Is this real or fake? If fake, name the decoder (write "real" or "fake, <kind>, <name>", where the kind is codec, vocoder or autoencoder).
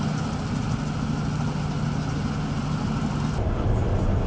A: real